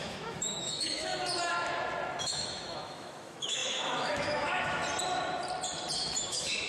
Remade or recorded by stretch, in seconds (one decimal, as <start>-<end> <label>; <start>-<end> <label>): 0.0-1.1 remade; 1.1-2.2 recorded; 2.2-4.8 remade; 4.8-6.0 recorded; 6.0-6.7 remade